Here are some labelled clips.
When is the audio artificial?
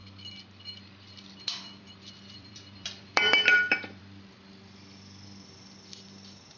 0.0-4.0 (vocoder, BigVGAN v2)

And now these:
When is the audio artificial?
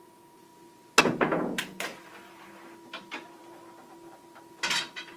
0.0-0.5 (vocoder, Vocos); 1.0-1.9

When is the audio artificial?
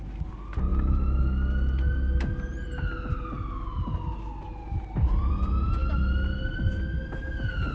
none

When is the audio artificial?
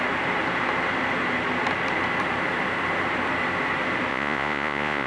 4.1-5.1 (vocoder, Vocos)